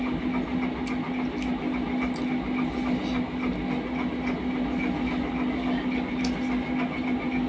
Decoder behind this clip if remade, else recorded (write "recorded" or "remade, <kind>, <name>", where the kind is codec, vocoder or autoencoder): recorded